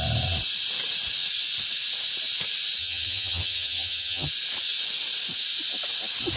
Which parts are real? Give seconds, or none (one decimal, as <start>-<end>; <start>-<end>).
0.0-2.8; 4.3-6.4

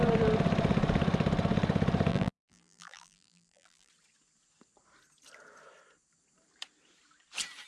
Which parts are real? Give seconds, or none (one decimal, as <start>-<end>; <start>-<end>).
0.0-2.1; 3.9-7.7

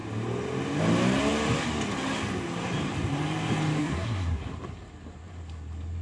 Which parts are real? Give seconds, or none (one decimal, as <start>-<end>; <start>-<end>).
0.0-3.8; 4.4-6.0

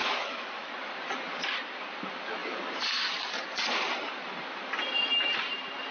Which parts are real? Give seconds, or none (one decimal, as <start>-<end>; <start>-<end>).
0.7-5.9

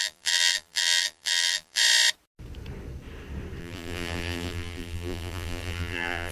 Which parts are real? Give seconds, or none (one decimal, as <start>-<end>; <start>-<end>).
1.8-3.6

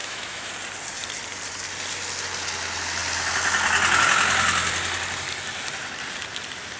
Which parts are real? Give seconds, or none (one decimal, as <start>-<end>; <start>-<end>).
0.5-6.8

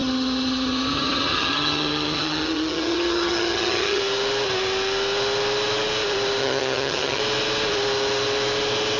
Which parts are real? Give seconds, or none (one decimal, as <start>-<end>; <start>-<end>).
4.0-6.4; 7.2-9.0

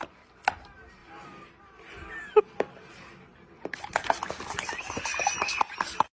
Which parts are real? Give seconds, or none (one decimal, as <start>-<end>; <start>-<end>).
0.0-6.2